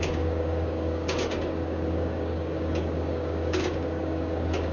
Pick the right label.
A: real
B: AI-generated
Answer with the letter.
B